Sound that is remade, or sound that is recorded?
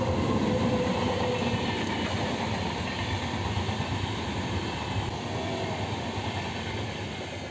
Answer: recorded